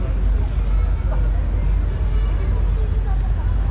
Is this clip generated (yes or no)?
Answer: no